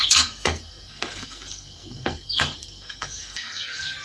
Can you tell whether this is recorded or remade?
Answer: remade